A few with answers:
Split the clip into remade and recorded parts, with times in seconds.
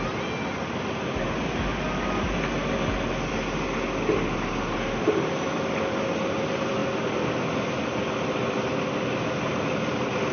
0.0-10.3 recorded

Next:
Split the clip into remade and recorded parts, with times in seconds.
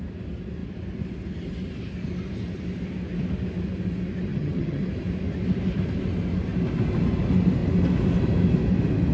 0.0-4.3 recorded; 4.3-4.9 remade; 4.9-9.1 recorded